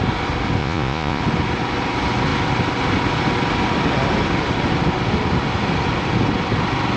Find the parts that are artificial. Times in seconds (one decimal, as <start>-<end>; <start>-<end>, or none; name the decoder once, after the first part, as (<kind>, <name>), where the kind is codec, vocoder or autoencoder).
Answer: 0.6-1.2 (vocoder, Vocos)